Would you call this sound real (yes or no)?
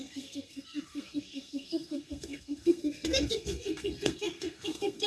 no